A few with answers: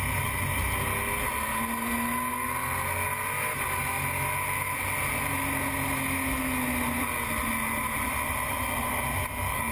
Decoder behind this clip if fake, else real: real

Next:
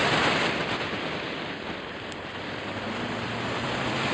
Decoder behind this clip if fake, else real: fake, vocoder, BigVGAN v2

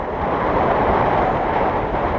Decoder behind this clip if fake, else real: fake, vocoder, BigVGAN v2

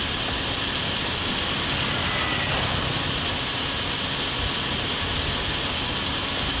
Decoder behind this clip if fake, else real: real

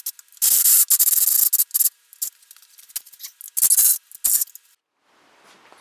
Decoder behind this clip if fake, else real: real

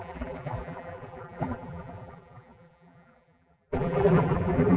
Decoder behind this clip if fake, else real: fake, vocoder, BigVGAN v2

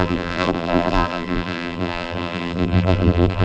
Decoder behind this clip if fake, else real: fake, vocoder, BigVGAN v2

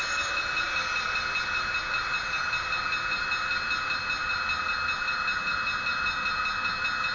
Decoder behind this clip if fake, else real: real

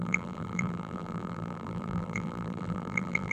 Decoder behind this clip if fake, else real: fake, vocoder, BigVGAN v2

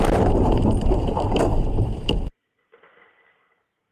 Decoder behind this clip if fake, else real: fake, vocoder, BigVGAN v2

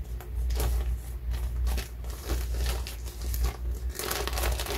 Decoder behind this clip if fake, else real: real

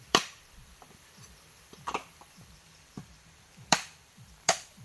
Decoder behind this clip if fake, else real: fake, vocoder, BigVGAN v2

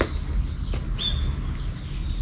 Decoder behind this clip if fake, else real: real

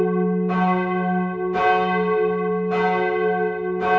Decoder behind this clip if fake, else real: real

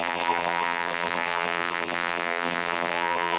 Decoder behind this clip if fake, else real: fake, vocoder, BigVGAN v2